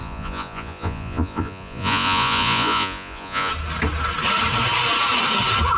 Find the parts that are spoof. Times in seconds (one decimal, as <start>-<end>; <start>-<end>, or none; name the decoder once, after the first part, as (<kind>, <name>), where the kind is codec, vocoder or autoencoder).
0.0-3.5 (vocoder, Vocos)